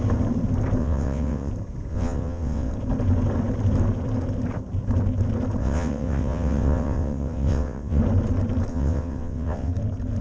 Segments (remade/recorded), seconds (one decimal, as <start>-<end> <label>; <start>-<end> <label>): 0.0-0.8 recorded; 0.8-1.5 remade; 1.5-1.9 recorded; 1.9-2.7 remade; 2.7-5.6 recorded; 5.6-8.0 remade; 8.0-8.7 recorded; 8.7-9.7 remade; 9.7-10.2 recorded